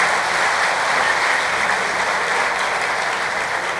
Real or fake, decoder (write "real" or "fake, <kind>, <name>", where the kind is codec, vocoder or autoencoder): real